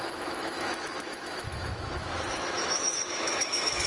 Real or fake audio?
fake